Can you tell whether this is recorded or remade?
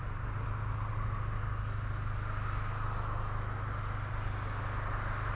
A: recorded